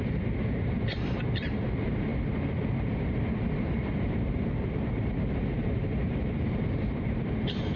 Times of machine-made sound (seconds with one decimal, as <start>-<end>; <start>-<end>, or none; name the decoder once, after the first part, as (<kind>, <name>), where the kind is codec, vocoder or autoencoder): 0.0-7.8 (vocoder, BigVGAN v2)